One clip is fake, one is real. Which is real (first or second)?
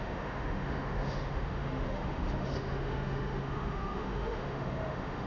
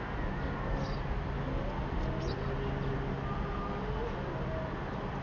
second